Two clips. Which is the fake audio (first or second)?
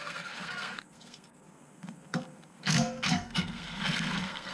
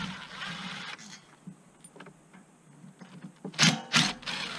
first